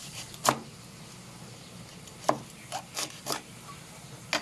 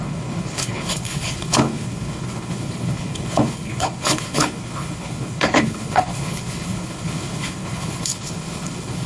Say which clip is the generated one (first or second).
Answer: second